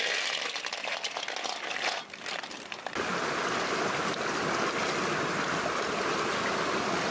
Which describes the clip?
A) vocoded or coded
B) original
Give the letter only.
B